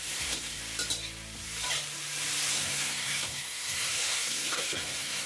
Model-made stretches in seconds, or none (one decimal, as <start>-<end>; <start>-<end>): 0.0-0.6; 2.5-5.3

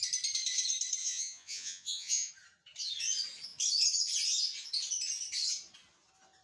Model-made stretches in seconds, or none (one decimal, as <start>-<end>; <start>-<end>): 1.0-2.3

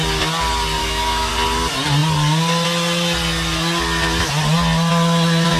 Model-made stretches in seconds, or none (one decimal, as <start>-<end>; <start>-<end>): 0.8-1.3